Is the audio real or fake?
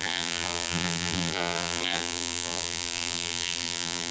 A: fake